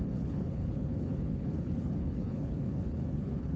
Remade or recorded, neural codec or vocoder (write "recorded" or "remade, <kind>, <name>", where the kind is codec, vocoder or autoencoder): remade, codec, HILCodec